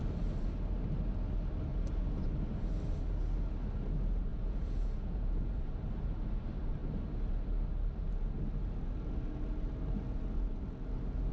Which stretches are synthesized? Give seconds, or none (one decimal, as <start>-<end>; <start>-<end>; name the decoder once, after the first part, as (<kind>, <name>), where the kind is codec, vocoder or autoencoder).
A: 4.3-5.5 (vocoder, Vocos)